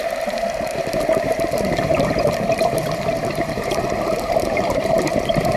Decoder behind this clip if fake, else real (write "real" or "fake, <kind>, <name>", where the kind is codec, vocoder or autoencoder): fake, vocoder, BigVGAN v2